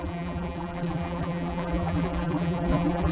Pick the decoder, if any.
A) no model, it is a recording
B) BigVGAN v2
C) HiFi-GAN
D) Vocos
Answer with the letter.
B